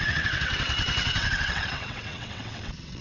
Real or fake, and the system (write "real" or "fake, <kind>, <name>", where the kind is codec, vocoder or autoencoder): fake, vocoder, WaveNeXt